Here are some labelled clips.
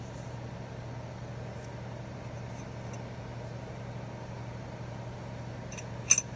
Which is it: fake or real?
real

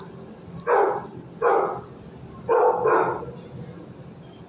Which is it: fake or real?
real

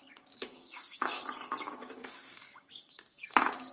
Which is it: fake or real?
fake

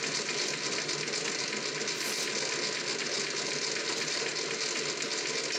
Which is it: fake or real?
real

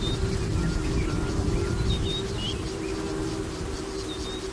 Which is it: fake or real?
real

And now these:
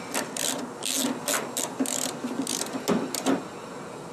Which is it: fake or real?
real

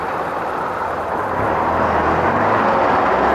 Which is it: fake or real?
real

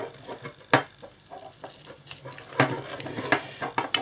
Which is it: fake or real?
real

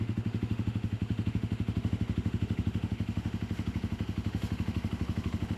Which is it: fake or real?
fake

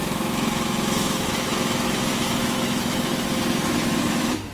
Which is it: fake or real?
fake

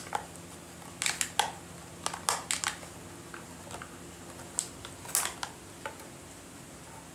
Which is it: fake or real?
real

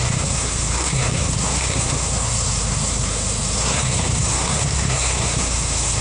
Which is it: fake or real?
fake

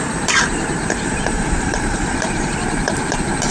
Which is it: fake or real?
fake